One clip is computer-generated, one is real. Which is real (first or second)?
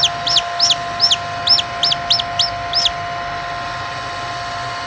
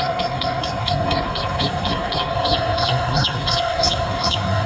first